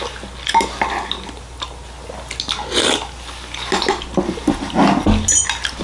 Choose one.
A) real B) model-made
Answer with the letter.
A